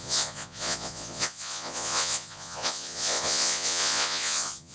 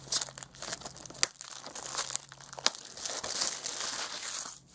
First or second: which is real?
second